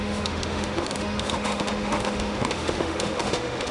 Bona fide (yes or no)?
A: no